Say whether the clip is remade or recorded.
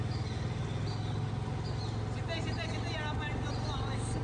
recorded